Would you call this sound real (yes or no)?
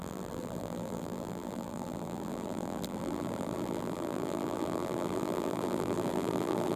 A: no